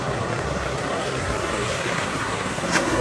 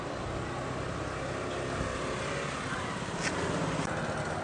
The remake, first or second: first